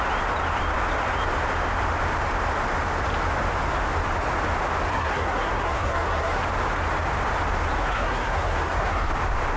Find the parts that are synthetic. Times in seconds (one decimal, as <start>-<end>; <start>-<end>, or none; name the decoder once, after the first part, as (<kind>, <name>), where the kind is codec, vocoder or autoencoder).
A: 4.9-6.4 (codec, SNAC); 7.8-9.1